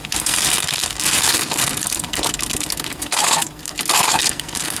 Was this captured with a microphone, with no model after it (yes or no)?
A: no